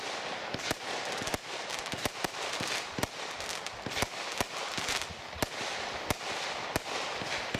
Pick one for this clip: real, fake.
real